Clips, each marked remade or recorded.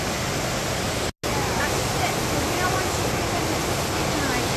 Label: recorded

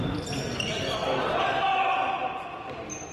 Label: recorded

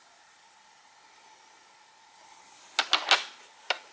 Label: recorded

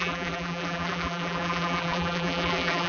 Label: remade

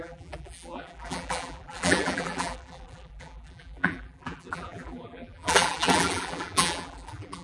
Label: remade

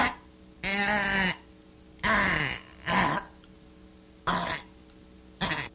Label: recorded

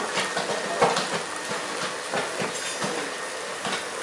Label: recorded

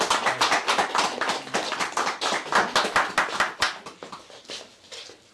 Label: recorded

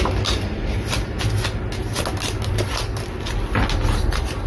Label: recorded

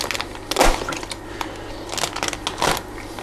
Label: recorded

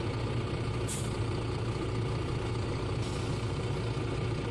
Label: recorded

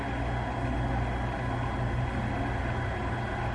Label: recorded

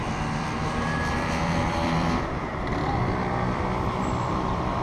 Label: remade